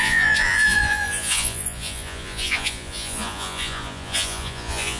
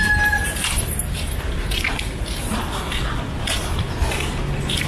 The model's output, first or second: first